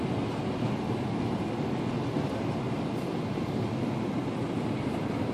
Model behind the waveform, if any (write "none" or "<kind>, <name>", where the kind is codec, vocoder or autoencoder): none